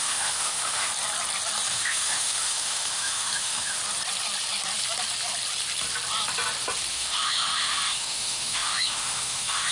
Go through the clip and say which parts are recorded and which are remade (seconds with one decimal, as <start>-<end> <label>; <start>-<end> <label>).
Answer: 0.0-0.9 remade; 0.9-1.7 recorded; 1.7-3.8 remade; 3.8-6.9 recorded; 6.9-9.7 remade